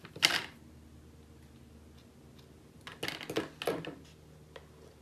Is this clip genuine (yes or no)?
yes